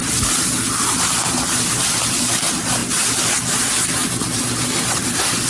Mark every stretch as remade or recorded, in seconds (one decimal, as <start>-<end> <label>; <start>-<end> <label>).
0.0-5.5 recorded